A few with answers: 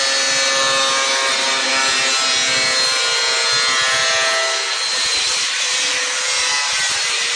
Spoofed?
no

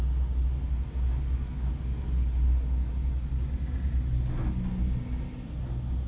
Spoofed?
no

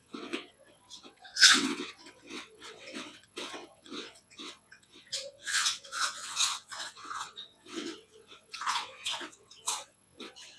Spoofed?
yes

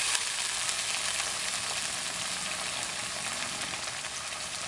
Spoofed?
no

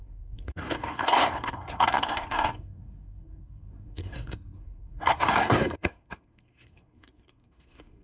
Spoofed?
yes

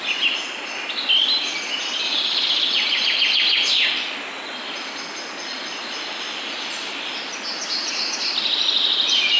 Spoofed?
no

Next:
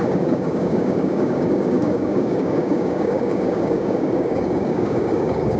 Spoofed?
yes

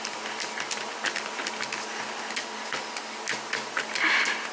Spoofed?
no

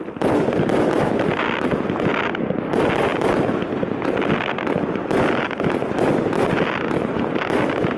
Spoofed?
no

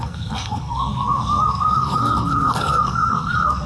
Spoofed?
yes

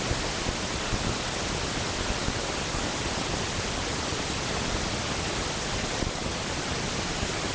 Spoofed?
no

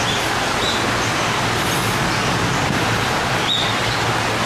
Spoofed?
no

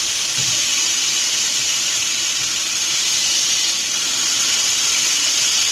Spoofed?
no